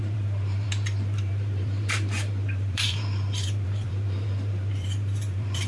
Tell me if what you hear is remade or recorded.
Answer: remade